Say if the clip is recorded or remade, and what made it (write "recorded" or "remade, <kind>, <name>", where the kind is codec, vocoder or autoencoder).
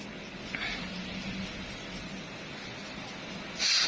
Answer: recorded